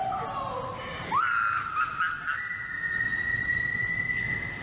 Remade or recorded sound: recorded